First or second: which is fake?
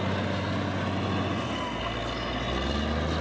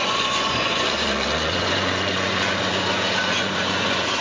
second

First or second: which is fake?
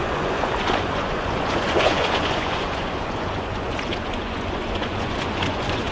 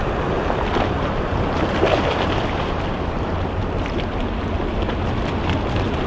first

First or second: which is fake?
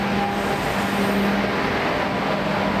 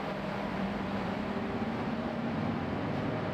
second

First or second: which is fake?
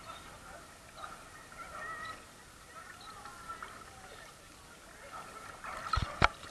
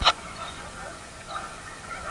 second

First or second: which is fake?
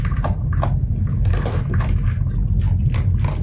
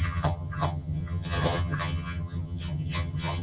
second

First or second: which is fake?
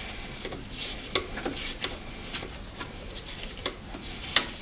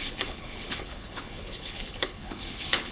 second